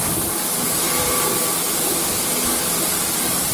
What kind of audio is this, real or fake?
real